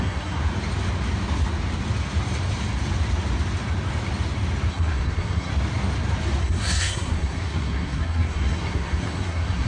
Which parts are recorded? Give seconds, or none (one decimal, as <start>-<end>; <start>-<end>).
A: 0.4-4.7; 5.5-6.4